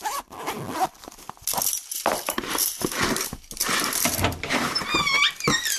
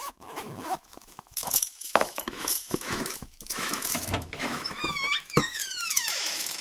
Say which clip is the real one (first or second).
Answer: first